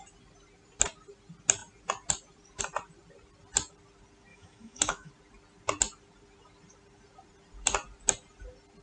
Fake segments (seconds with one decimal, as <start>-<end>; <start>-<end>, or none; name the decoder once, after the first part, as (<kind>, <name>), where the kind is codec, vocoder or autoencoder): 4.3-5.1 (autoencoder, DAC-VAE)

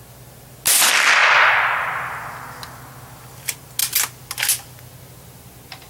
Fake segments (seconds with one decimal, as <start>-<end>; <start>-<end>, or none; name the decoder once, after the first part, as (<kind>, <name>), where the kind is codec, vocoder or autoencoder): none

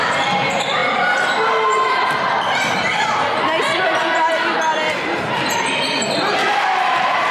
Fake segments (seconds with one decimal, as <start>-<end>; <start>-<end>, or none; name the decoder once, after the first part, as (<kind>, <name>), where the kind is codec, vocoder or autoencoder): none

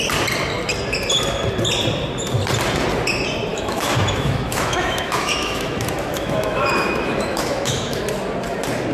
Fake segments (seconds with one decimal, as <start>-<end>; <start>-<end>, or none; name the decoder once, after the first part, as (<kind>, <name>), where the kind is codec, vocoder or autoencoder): 3.5-8.0 (autoencoder, DAC-VAE)

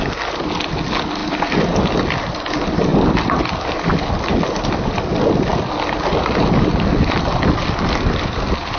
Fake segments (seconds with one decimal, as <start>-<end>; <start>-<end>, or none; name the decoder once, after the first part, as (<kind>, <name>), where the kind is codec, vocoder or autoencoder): none

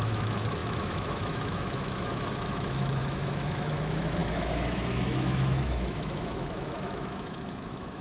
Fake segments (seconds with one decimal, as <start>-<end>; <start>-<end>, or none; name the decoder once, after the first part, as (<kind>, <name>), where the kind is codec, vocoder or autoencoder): 0.0-8.0 (autoencoder, DAC-VAE)

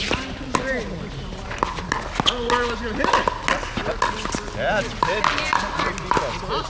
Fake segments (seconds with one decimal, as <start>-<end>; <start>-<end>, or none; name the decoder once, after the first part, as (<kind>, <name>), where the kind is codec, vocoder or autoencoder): none